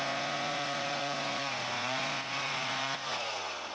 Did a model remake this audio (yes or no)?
yes